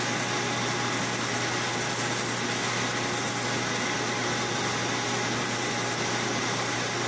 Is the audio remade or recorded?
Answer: recorded